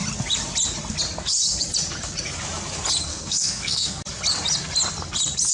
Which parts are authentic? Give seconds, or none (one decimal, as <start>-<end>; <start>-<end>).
0.0-3.1; 4.0-5.5